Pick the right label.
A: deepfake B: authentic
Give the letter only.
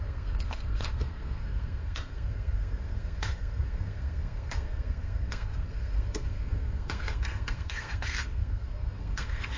A